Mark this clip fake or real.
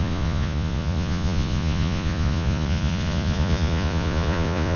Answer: fake